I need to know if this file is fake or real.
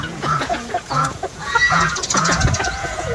fake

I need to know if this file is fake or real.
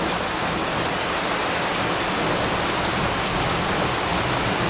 real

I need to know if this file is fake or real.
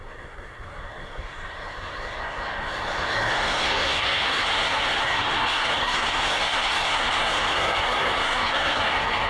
fake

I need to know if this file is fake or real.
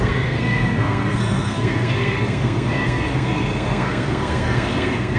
fake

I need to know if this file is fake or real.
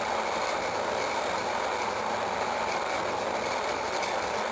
real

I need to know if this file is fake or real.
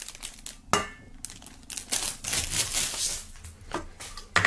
real